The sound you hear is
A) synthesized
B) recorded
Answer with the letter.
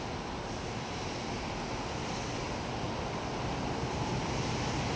B